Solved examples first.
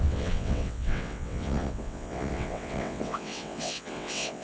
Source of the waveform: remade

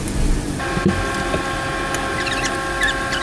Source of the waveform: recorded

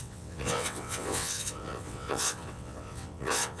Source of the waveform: remade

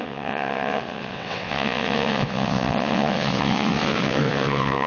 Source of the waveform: remade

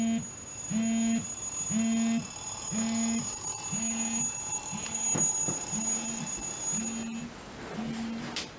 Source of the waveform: recorded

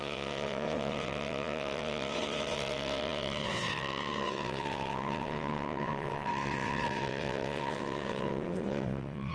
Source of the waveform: remade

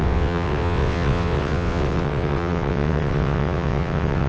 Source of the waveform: remade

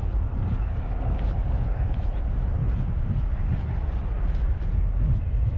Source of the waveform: recorded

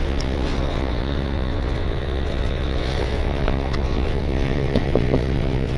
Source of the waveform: remade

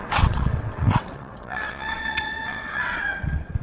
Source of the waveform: remade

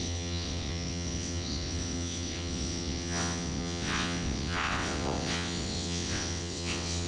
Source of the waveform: remade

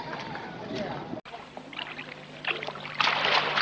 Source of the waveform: recorded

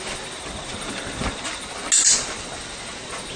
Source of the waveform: recorded